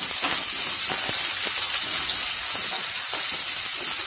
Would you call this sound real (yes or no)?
yes